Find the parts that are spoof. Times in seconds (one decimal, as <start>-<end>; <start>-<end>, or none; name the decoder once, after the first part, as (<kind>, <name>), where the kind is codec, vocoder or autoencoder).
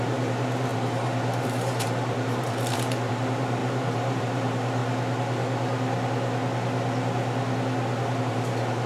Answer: 0.0-4.8 (vocoder, BigVGAN v2); 8.2-8.9